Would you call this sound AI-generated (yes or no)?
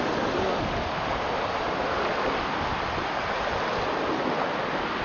no